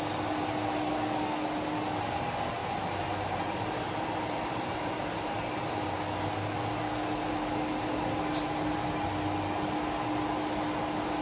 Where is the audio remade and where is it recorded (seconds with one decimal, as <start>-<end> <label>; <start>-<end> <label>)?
0.0-2.6 recorded; 2.6-5.6 remade; 5.6-11.2 recorded